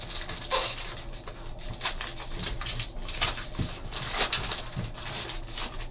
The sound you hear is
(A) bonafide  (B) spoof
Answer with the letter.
A